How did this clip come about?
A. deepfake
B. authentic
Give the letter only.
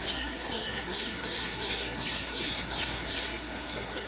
A